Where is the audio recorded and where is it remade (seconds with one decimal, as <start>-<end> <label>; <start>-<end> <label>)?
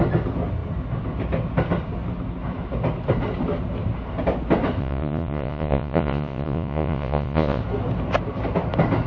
0.0-4.8 recorded; 4.8-7.6 remade; 7.6-9.1 recorded